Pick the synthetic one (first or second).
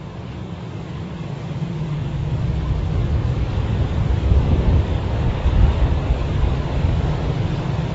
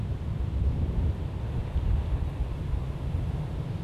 first